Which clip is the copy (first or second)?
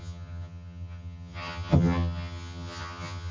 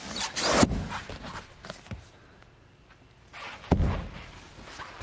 first